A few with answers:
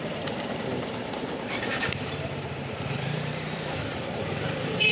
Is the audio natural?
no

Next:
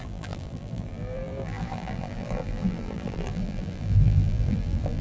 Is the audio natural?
no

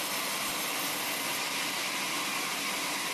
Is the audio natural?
yes